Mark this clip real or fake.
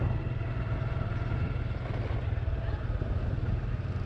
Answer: real